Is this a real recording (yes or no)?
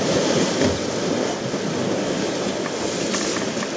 yes